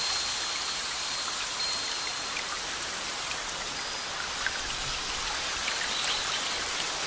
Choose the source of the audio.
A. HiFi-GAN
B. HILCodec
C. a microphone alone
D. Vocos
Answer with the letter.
C